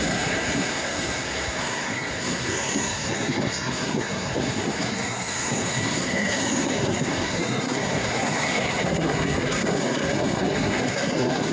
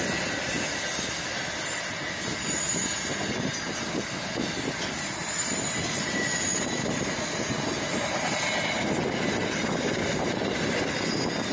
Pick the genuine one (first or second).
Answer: second